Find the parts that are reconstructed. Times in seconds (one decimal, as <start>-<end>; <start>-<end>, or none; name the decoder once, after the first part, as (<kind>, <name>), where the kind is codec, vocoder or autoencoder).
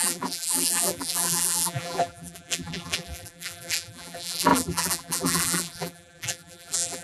0.0-7.0 (vocoder, BigVGAN v2)